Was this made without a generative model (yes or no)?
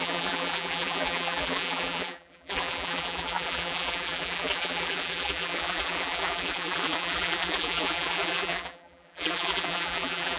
no